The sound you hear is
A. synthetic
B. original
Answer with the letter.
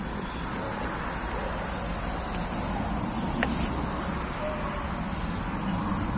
B